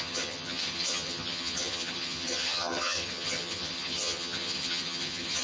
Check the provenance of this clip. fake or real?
fake